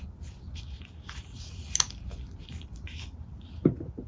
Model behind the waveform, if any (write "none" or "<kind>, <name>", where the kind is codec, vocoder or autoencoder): none